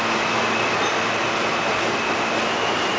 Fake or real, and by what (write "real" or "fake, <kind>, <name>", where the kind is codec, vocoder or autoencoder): real